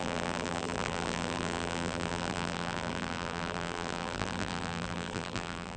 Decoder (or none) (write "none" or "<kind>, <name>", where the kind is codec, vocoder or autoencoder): vocoder, BigVGAN v2